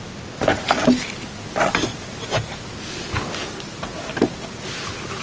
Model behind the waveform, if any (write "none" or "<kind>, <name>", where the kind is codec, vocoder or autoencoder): none